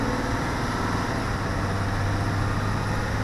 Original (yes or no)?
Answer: yes